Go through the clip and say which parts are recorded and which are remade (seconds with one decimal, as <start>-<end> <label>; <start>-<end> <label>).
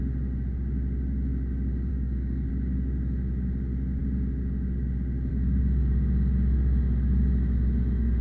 0.0-1.9 recorded; 1.9-2.5 remade; 2.5-8.2 recorded